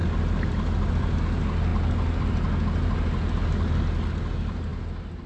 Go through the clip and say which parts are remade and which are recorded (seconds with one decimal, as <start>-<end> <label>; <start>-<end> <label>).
0.0-5.3 recorded